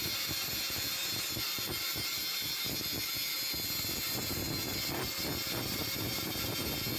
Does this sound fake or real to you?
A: real